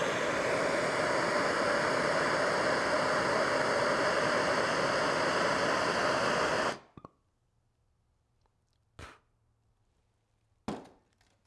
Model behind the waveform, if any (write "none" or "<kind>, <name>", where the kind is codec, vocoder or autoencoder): none